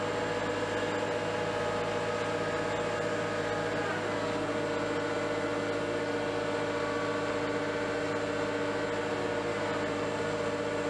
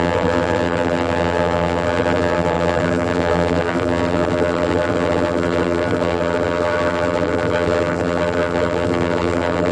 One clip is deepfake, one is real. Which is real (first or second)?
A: first